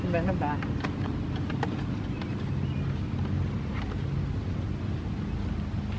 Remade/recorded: recorded